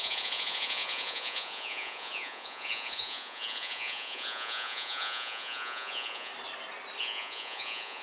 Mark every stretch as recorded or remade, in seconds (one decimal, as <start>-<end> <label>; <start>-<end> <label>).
0.0-6.3 remade; 6.3-7.0 recorded; 7.0-8.0 remade